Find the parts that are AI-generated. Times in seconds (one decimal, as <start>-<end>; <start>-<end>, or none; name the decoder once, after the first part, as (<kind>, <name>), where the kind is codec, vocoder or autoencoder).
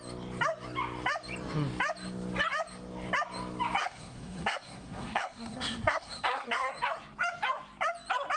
3.8-6.7 (codec, SNAC)